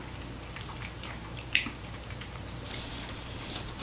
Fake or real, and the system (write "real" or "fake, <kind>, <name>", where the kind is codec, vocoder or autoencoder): fake, vocoder, BigVGAN v2